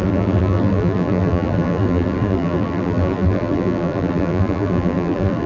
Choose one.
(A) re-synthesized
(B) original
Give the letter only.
A